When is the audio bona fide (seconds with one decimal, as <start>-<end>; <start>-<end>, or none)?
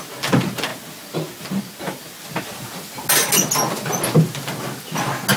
0.0-5.4